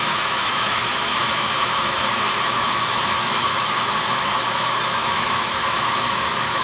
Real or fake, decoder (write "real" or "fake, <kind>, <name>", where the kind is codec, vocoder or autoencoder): fake, autoencoder, DAC-VAE